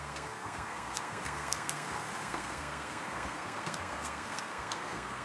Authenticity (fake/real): fake